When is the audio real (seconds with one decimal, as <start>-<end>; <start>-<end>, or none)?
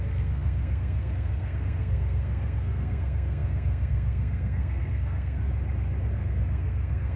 5.5-6.1